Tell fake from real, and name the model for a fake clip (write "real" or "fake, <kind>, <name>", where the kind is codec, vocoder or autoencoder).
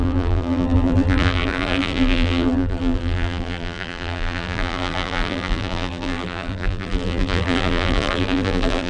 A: fake, vocoder, BigVGAN v2